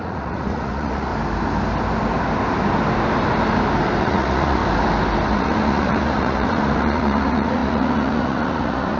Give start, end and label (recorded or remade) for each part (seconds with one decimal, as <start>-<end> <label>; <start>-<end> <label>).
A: 0.0-1.1 remade; 1.1-4.0 recorded; 4.0-4.6 remade; 4.6-5.3 recorded; 5.3-9.0 remade